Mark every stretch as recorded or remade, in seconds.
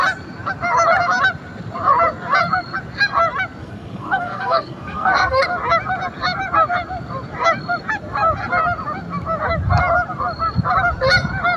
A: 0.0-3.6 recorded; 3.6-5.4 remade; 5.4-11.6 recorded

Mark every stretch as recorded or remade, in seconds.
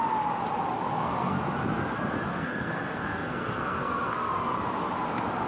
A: 0.0-0.9 recorded; 0.9-1.4 remade; 1.4-2.3 recorded; 2.3-4.3 remade; 4.3-5.5 recorded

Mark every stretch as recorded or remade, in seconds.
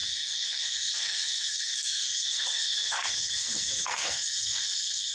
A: 0.0-5.1 remade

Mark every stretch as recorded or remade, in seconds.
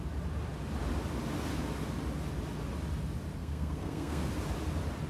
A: 0.0-3.4 recorded; 3.4-4.3 remade; 4.3-5.1 recorded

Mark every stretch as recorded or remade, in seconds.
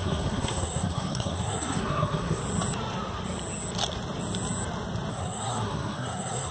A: 0.0-2.4 remade; 2.4-5.1 recorded; 5.1-6.5 remade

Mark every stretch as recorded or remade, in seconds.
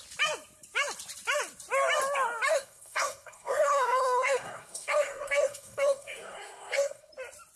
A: 0.0-2.5 recorded; 2.5-7.1 remade; 7.1-7.6 recorded